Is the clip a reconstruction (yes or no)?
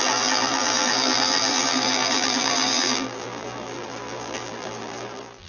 yes